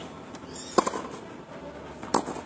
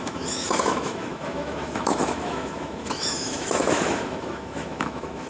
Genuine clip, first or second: first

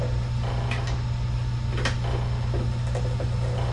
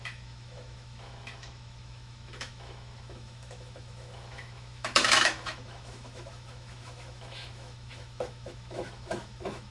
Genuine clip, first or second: first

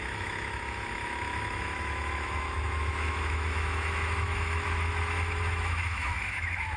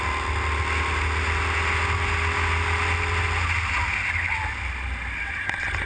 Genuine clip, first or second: second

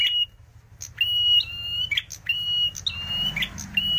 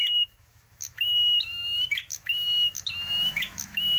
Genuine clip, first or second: first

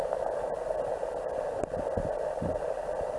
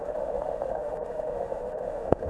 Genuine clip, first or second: first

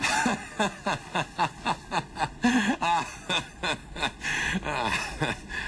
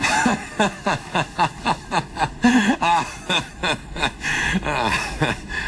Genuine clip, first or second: first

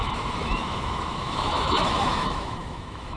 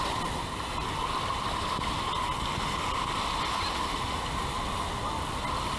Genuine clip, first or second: second